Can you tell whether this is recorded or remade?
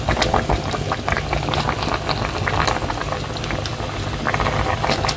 recorded